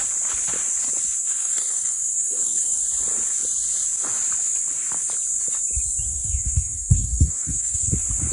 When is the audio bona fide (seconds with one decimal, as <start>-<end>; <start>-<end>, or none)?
0.0-1.2; 2.8-6.1; 7.9-8.3